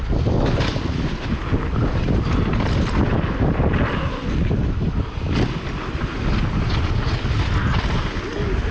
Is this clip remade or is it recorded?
recorded